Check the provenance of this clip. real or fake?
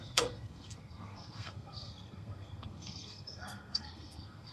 fake